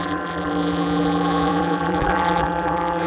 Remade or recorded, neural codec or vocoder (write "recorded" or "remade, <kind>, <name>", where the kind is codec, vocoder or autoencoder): remade, vocoder, BigVGAN v2